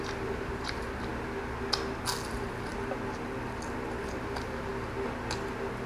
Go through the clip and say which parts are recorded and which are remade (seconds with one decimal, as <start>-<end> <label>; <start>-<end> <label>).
0.0-1.1 remade; 1.1-2.3 recorded; 2.3-2.7 remade; 2.7-4.0 recorded; 4.0-4.7 remade; 4.7-5.9 recorded